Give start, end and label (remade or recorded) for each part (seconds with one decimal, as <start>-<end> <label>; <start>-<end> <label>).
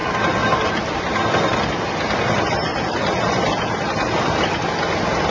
0.0-5.3 recorded